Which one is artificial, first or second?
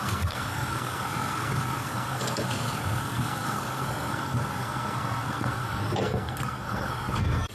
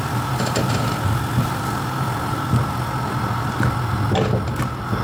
first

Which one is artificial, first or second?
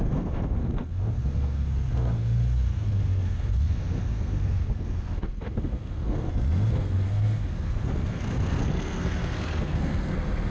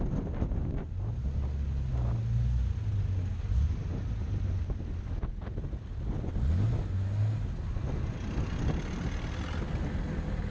first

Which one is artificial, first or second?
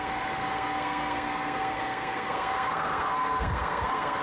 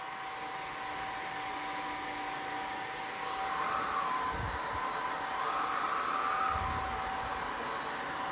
first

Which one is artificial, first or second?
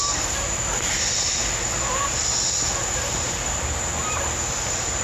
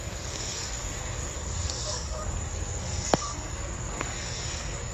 second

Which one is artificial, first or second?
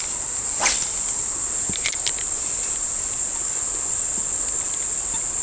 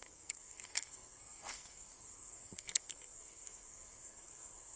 second